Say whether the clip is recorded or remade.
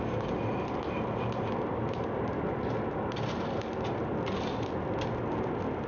recorded